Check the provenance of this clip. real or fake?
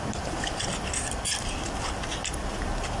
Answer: real